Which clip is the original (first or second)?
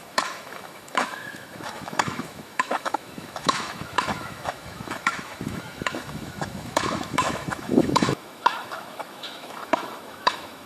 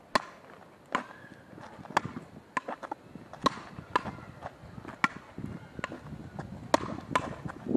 second